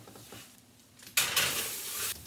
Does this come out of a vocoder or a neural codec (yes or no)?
no